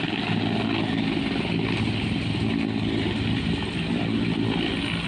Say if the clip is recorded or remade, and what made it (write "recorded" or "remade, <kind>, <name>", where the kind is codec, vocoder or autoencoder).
recorded